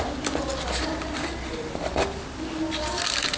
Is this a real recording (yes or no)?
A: yes